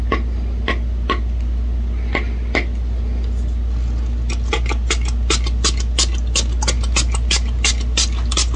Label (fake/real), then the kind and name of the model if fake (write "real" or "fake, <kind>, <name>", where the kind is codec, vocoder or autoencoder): real